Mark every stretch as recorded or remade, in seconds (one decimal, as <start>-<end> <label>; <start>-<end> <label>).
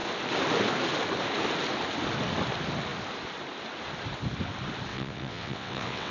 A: 0.0-4.9 recorded; 4.9-6.1 remade